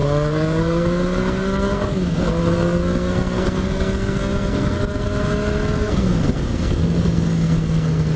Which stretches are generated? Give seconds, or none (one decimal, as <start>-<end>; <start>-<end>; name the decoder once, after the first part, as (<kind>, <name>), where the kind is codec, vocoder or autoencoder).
0.0-8.2 (codec, SNAC)